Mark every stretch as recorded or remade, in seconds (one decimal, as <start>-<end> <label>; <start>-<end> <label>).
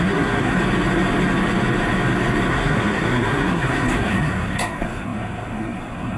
0.0-0.5 remade; 0.5-2.5 recorded; 2.5-6.2 remade